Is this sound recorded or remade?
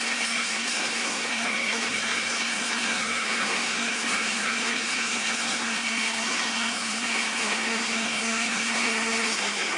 remade